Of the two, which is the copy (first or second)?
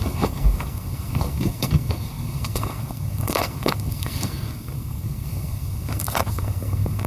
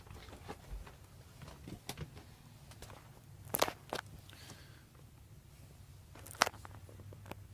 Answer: first